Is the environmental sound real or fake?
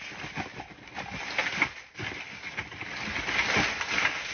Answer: real